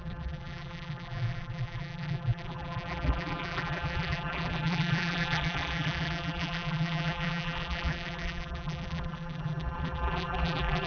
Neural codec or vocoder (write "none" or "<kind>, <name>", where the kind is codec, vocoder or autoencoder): vocoder, BigVGAN v2